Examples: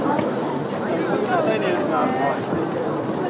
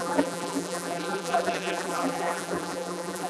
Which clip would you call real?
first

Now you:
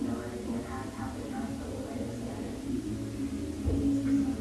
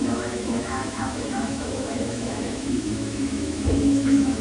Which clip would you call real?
first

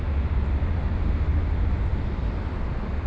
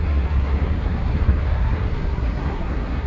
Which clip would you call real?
first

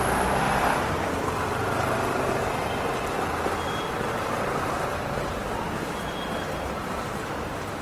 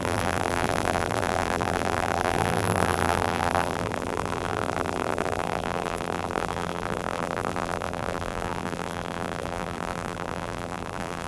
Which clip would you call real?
first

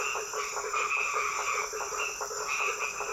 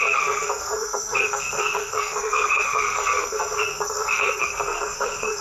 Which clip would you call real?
first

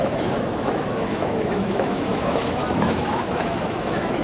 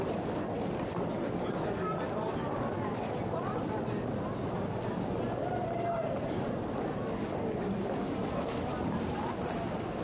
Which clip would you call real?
second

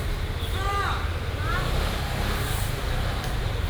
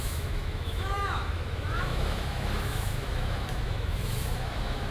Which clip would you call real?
first